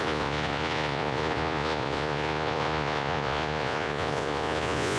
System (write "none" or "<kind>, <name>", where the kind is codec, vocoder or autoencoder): vocoder, Vocos